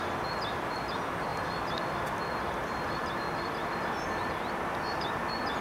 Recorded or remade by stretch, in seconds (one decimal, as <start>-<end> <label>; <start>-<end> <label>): 0.0-1.3 recorded; 1.3-4.1 remade; 4.1-5.6 recorded